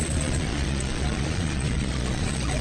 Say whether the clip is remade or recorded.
remade